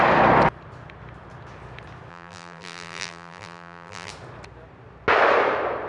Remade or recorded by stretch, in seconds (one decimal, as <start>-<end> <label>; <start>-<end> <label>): 0.0-2.1 recorded; 2.1-4.1 remade; 4.1-5.9 recorded